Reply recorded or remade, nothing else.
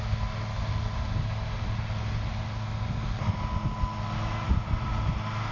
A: recorded